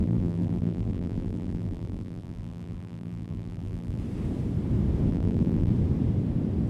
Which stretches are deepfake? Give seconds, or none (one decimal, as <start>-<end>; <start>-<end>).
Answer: 0.0-4.0; 5.1-5.7